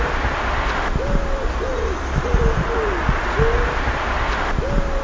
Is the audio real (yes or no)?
yes